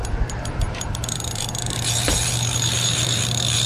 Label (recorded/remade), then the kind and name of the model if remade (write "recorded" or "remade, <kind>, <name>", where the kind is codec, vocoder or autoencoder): remade, vocoder, BigVGAN v2